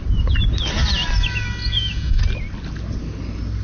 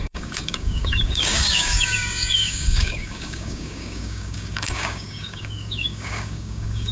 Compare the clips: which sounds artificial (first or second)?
second